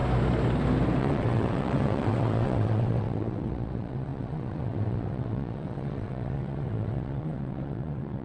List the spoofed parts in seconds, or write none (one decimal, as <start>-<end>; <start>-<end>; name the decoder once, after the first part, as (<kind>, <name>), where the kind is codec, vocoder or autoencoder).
1.0-8.2 (vocoder, WaveNeXt)